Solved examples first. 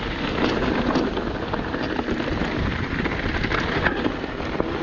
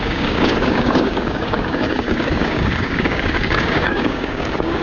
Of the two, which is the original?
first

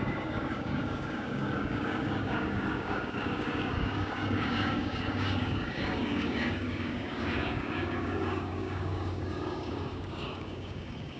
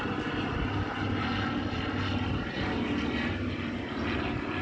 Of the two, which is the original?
second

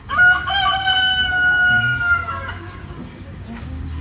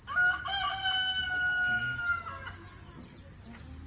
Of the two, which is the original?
second